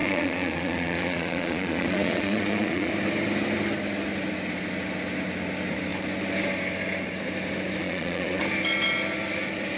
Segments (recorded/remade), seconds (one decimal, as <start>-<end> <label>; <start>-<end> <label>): 0.0-2.9 remade; 2.9-7.8 recorded; 7.8-8.4 remade; 8.4-9.8 recorded